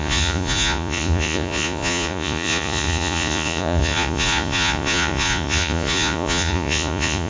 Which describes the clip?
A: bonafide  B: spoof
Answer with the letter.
B